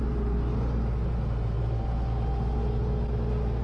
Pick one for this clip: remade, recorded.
recorded